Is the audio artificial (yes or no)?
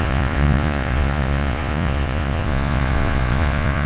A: yes